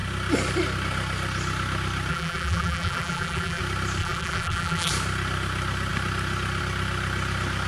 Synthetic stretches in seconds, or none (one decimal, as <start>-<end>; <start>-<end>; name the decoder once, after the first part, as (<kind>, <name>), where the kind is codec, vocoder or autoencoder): 2.1-3.6 (vocoder, BigVGAN v2); 4.0-4.9